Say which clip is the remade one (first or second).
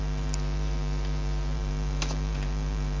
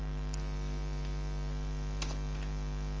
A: first